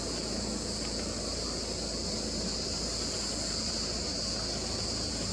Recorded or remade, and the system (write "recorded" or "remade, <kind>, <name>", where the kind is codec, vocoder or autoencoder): recorded